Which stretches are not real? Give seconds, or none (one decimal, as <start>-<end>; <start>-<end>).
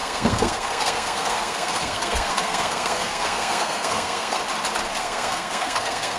0.0-4.4; 5.0-6.2